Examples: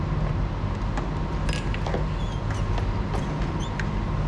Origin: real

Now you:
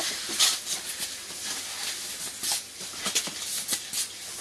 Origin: real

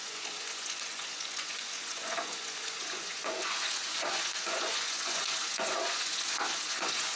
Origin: fake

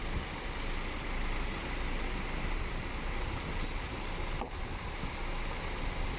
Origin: real